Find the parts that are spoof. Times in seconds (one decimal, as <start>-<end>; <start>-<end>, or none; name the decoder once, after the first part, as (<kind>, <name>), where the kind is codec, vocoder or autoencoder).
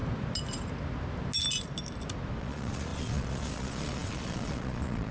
2.4-5.1 (vocoder, Vocos)